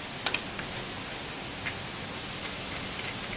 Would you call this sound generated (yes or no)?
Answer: no